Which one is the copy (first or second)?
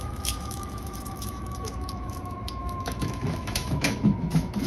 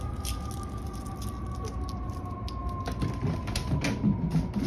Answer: first